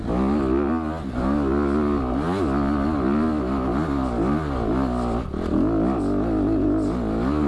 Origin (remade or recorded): recorded